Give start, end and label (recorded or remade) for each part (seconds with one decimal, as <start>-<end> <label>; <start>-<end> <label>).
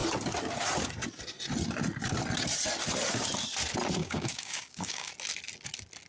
0.0-4.0 recorded; 4.0-5.1 remade; 5.1-6.1 recorded